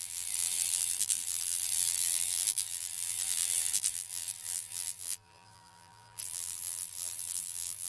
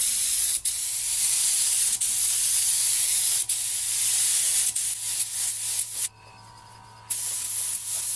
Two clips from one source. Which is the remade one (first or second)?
first